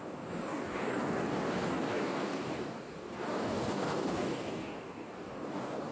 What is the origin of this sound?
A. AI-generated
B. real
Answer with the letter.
A